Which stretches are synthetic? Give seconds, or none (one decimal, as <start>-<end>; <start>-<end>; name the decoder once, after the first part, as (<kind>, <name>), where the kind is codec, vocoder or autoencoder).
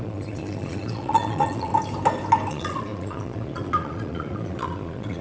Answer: 0.0-1.7 (vocoder, Vocos); 2.5-5.2